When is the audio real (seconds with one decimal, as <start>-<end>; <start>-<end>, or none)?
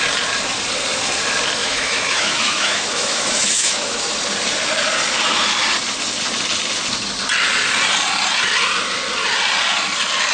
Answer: 0.0-1.6; 4.0-10.3